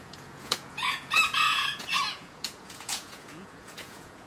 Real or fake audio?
fake